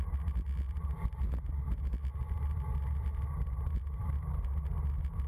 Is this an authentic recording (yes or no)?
yes